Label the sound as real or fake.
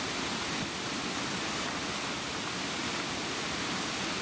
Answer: real